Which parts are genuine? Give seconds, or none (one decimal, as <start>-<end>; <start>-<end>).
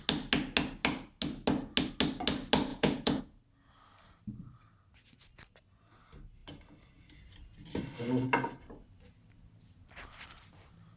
0.0-2.7; 3.2-11.0